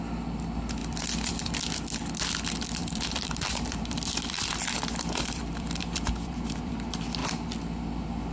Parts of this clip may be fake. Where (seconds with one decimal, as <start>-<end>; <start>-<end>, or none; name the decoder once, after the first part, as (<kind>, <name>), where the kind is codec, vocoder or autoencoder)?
0.8-1.6 (vocoder, BigVGAN v2); 2.8-6.7